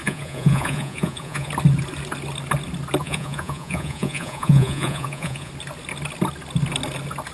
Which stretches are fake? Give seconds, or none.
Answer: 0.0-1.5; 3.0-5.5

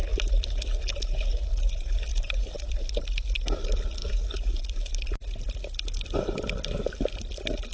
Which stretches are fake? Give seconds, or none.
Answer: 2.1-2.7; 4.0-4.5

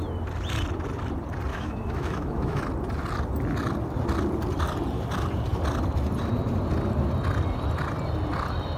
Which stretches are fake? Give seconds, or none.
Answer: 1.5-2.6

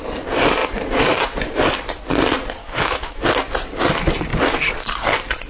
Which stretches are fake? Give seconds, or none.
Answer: 2.6-3.2